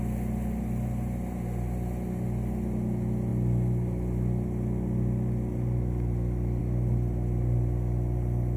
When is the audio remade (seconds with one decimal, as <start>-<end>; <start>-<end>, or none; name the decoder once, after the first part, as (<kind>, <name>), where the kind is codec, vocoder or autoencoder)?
none